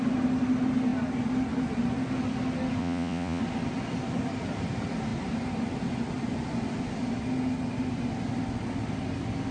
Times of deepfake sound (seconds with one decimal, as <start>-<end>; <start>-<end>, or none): 2.8-3.4